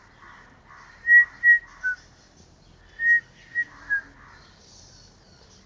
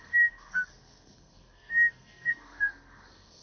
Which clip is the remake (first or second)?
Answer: second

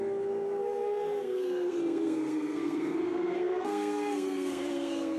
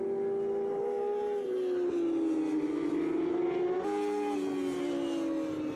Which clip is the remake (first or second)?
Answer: first